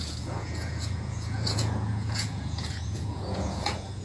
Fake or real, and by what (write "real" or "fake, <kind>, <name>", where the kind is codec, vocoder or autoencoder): fake, vocoder, Vocos